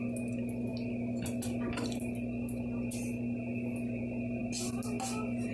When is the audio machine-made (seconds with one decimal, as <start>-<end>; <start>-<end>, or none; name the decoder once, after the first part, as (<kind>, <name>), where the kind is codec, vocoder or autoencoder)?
none